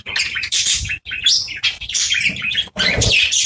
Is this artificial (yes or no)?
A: yes